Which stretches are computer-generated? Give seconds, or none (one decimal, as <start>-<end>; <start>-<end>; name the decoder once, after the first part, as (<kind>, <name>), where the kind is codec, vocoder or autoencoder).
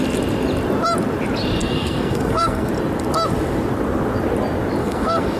1.6-2.7 (codec, SNAC); 4.8-5.4